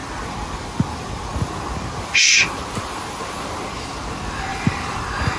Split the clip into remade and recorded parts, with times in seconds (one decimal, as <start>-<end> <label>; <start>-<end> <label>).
0.0-4.5 recorded; 4.5-5.0 remade; 5.0-5.4 recorded